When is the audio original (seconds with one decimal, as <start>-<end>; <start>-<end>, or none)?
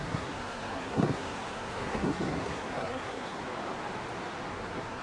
3.4-4.5